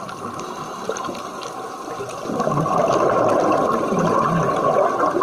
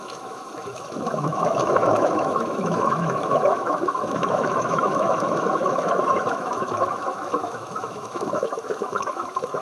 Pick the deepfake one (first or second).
second